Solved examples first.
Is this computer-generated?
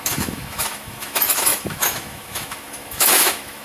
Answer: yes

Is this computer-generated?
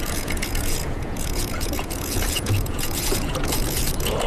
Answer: yes